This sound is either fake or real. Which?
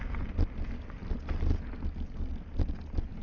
real